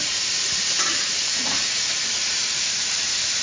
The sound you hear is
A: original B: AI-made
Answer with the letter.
B